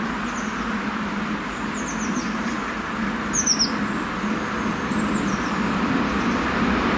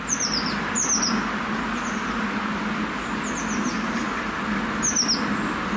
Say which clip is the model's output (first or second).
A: first